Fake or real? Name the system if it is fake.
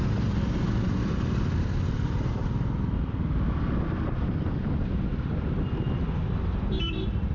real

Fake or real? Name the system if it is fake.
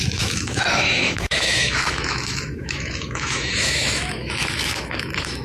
fake, autoencoder, DAC-VAE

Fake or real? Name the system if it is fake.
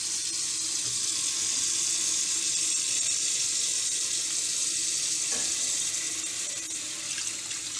real